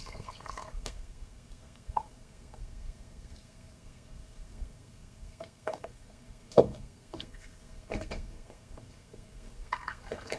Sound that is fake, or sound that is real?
fake